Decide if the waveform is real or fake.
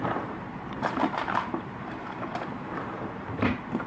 fake